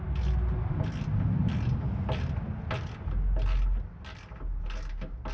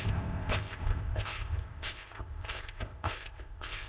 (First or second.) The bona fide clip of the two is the first